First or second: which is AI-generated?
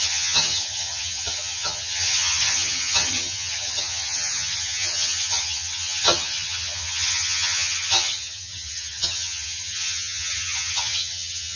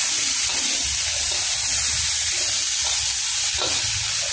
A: first